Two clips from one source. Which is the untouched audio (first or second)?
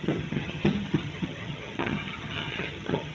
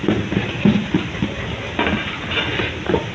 second